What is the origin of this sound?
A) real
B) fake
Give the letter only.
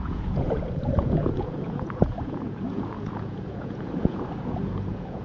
B